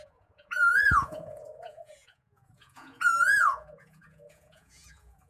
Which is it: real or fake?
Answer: fake